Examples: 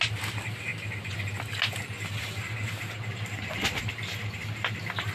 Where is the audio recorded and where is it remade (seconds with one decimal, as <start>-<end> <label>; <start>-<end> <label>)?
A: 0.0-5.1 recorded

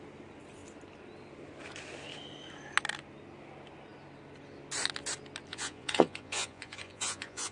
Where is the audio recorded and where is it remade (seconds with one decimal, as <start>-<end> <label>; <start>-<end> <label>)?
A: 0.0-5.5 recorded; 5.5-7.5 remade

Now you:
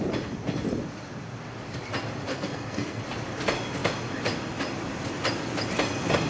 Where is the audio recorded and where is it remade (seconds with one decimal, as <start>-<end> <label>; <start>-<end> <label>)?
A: 0.0-2.3 recorded; 2.3-3.0 remade; 3.0-6.3 recorded

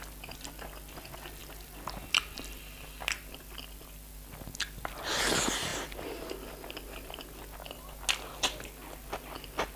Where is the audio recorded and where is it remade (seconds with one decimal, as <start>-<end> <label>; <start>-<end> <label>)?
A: 0.0-9.8 recorded

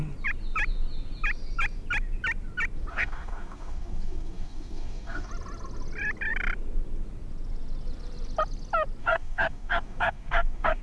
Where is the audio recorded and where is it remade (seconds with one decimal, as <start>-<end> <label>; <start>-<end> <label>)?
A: 0.0-2.9 recorded; 2.9-5.3 remade; 5.3-9.0 recorded; 9.0-10.8 remade

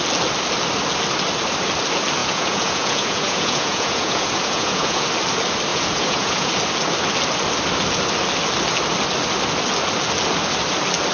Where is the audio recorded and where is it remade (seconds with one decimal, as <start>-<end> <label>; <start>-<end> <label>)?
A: 0.0-2.2 recorded; 2.2-5.1 remade; 5.1-5.7 recorded; 5.7-6.5 remade; 6.5-11.1 recorded

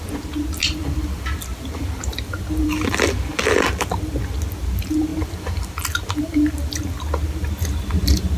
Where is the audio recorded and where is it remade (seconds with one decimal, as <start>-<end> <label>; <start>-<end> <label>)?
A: 0.0-0.6 recorded; 0.6-3.7 remade; 3.7-5.1 recorded; 5.1-6.7 remade; 6.7-8.4 recorded

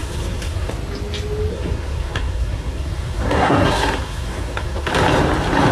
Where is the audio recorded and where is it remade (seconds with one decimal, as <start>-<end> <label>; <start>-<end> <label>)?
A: 0.0-0.7 remade; 0.7-1.5 recorded; 1.5-4.9 remade; 4.9-5.7 recorded